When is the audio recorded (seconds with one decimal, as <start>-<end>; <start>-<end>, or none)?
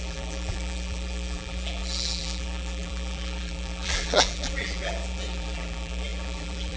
none